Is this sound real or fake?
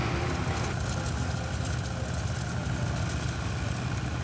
real